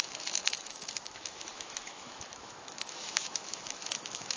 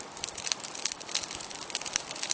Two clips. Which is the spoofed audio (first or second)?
first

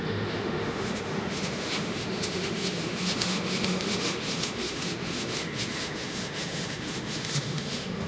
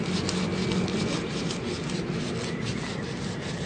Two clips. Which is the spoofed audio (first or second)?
first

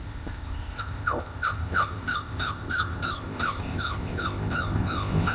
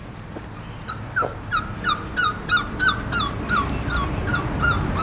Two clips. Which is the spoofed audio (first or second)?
first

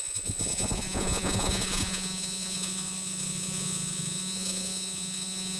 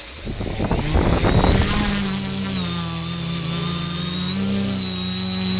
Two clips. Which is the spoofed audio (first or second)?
first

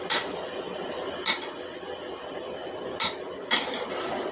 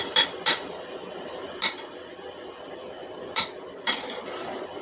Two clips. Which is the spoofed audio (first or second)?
second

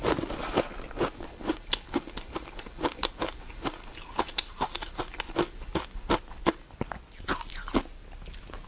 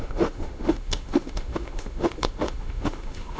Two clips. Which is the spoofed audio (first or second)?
second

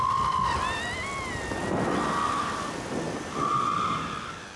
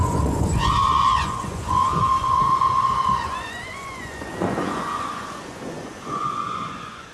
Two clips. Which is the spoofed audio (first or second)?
second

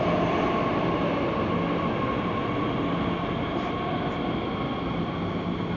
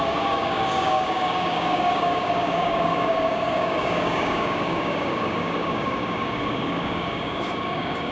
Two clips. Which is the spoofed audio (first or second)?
second